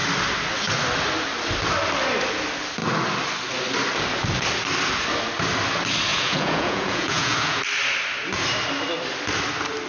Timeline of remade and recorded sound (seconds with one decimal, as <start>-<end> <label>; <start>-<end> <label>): 0.0-6.1 recorded; 6.1-7.6 remade; 7.6-9.9 recorded